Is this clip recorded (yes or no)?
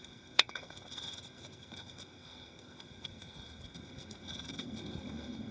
no